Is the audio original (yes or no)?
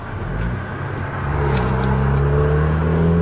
yes